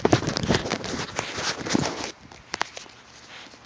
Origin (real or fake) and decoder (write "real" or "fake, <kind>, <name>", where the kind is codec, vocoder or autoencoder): real